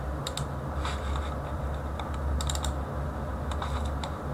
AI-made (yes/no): no